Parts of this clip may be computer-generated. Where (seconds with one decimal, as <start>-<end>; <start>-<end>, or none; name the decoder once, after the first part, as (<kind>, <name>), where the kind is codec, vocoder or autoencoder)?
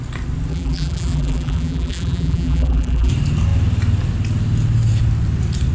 0.5-3.1 (vocoder, BigVGAN v2)